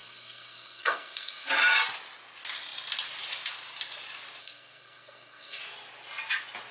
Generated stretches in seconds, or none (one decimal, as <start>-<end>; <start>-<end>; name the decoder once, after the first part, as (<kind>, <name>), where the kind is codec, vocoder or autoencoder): 0.0-1.5 (codec, SNAC); 4.4-5.6